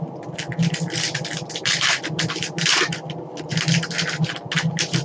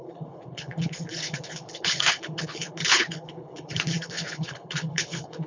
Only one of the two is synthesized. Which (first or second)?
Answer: second